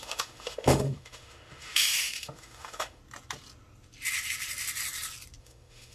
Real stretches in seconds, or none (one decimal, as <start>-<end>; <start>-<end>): 3.0-5.4